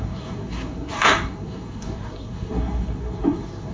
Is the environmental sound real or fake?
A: fake